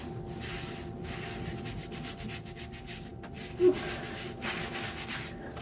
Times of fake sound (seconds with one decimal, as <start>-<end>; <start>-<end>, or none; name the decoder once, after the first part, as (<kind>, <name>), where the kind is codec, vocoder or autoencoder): none